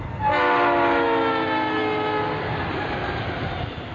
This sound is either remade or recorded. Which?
recorded